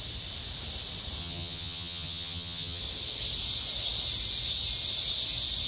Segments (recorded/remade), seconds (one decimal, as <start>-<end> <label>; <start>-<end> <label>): 0.0-1.2 recorded; 1.2-2.8 remade; 2.8-5.7 recorded